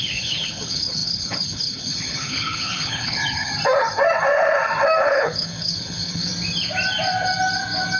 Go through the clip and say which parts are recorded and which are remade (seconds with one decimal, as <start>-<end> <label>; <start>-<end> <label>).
0.0-3.5 remade; 3.5-5.0 recorded; 5.0-6.3 remade; 6.3-8.0 recorded